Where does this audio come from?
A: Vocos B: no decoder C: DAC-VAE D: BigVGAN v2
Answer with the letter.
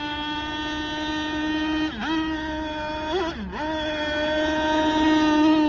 B